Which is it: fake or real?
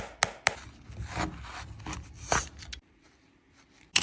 real